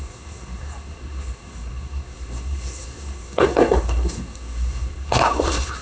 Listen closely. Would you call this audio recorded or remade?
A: remade